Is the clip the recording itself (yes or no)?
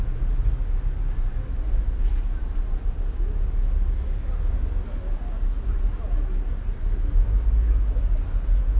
yes